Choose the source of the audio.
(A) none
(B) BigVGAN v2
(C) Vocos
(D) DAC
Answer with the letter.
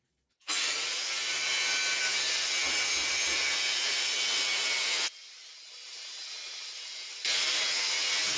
A